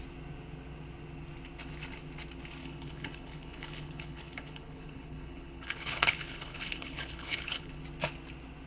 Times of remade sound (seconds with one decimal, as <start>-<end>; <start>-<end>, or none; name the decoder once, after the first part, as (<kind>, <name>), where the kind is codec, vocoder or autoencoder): 2.6-7.8 (codec, HILCodec)